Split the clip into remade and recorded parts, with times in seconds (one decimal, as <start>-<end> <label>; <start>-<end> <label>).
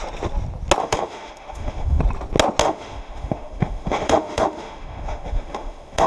0.0-0.8 recorded; 0.8-2.0 remade; 2.0-2.6 recorded; 2.6-6.1 remade